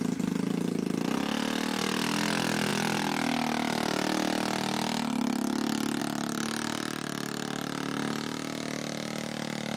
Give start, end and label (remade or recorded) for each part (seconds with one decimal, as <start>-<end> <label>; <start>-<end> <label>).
0.0-9.8 recorded